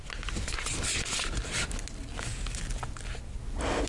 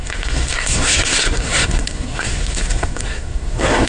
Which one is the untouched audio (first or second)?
first